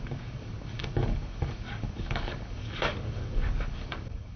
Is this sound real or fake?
fake